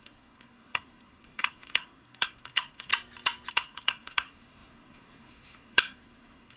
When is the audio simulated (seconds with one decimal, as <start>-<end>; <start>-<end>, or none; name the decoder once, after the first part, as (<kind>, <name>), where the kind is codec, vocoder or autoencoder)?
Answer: 0.0-2.9 (codec, SNAC); 3.5-6.6

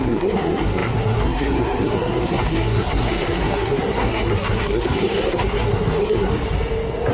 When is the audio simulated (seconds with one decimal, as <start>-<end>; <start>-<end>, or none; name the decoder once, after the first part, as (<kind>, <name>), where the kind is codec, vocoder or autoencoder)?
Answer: 0.0-6.3 (codec, SNAC)

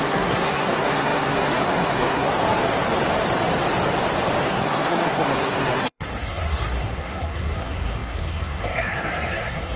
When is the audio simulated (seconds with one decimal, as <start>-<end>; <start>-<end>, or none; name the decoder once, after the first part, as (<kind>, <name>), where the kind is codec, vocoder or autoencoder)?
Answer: 0.0-2.3 (codec, SNAC); 4.5-9.8